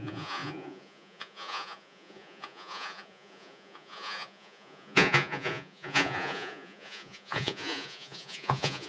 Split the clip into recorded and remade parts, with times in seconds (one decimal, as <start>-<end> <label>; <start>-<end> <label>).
0.0-8.9 remade